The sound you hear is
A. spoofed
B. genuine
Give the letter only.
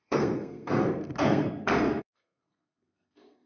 A